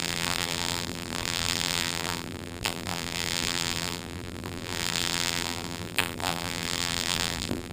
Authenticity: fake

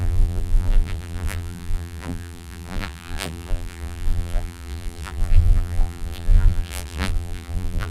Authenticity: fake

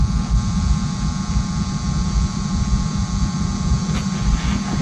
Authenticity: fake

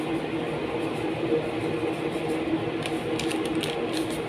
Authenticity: real